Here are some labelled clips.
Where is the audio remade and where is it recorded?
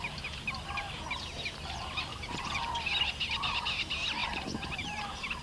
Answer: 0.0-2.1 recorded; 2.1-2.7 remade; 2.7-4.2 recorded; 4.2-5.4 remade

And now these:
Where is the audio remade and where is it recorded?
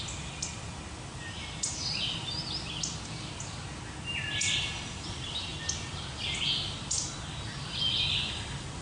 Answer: 0.0-0.7 remade; 0.7-4.9 recorded; 4.9-5.5 remade; 5.5-8.1 recorded; 8.1-8.8 remade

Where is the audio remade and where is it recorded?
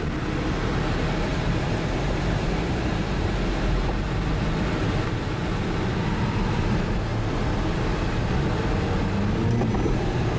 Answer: 0.0-1.3 recorded; 1.3-3.9 remade; 3.9-10.4 recorded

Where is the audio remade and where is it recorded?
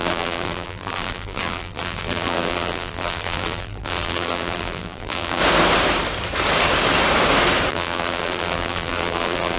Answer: 0.0-5.4 remade; 5.4-7.7 recorded; 7.7-9.6 remade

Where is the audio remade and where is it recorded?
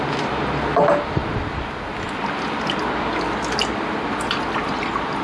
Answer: 0.0-5.2 recorded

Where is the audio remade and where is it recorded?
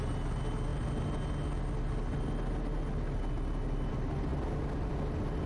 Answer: 0.0-5.5 recorded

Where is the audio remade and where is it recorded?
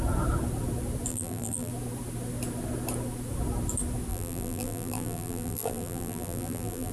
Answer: 0.0-1.1 recorded; 1.1-1.7 remade; 1.7-4.1 recorded; 4.1-6.9 remade